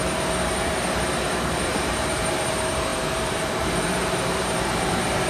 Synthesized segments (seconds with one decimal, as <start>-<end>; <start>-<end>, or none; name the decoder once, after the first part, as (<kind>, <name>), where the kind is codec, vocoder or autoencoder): 0.0-5.3 (vocoder, BigVGAN v2)